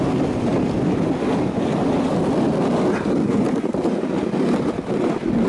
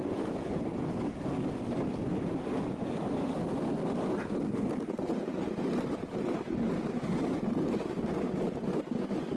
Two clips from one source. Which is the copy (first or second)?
second